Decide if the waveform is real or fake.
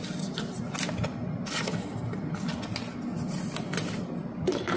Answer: real